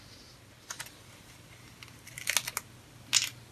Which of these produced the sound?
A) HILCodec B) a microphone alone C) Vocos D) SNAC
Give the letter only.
B